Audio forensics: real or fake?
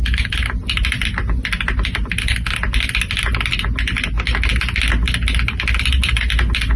real